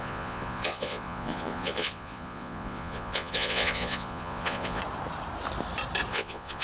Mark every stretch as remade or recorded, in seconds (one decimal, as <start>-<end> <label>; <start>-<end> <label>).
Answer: 0.0-4.8 remade; 4.8-6.1 recorded; 6.1-6.6 remade